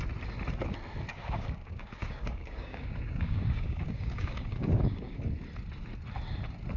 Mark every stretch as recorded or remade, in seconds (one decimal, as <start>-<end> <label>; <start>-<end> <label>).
0.0-1.1 recorded; 1.1-5.2 remade; 5.2-6.8 recorded